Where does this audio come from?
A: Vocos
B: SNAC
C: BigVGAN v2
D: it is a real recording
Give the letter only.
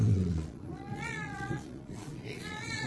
A